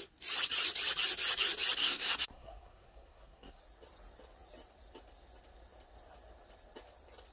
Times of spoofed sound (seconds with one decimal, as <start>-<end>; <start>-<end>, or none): 1.8-3.6